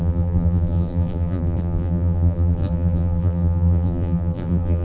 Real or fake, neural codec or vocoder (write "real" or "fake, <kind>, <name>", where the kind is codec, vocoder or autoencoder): fake, vocoder, BigVGAN v2